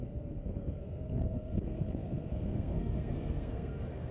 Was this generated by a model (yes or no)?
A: yes